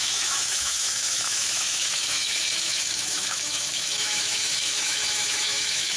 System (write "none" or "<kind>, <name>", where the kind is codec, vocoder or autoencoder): autoencoder, DAC-VAE